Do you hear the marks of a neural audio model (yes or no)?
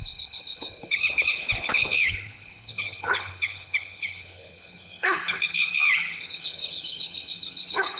yes